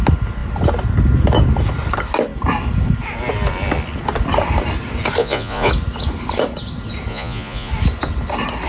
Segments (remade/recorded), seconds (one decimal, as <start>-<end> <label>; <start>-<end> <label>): 0.0-5.2 recorded; 5.2-5.7 remade; 5.7-7.1 recorded; 7.1-7.7 remade; 7.7-8.7 recorded